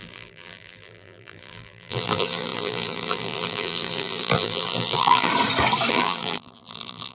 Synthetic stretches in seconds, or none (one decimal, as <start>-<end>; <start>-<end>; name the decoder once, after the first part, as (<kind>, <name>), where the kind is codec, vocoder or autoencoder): 0.0-5.3 (vocoder, BigVGAN v2); 5.9-7.1